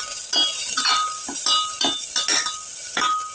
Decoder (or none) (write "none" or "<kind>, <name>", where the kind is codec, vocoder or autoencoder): none